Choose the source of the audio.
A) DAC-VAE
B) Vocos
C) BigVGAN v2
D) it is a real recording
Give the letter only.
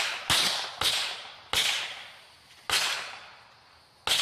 D